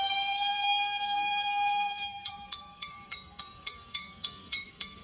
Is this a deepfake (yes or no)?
yes